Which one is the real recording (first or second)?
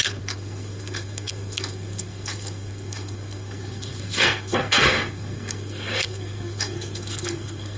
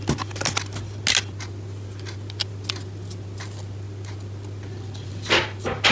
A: second